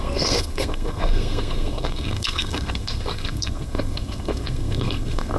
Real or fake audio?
fake